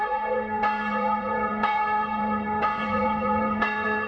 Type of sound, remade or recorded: remade